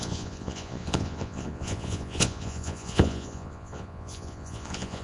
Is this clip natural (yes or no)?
no